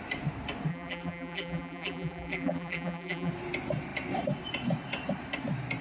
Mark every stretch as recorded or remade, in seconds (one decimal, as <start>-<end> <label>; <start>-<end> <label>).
0.0-0.7 recorded; 0.7-3.3 remade; 3.3-5.8 recorded